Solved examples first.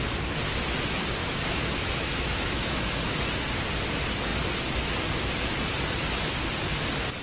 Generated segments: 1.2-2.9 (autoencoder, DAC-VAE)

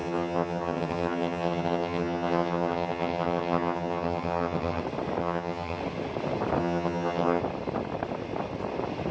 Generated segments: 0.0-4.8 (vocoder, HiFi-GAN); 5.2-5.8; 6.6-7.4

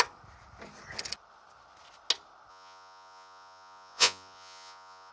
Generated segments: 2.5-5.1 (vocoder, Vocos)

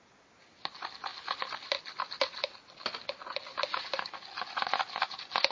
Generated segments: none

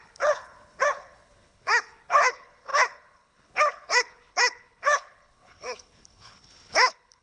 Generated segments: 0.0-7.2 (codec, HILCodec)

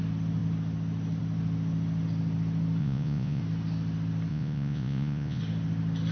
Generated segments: 2.8-3.4 (vocoder, Vocos); 4.3-5.4